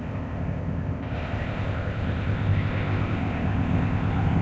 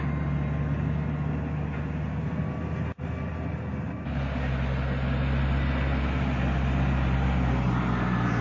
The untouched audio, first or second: second